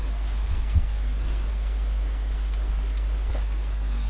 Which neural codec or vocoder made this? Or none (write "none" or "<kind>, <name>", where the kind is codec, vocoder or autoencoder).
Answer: codec, SNAC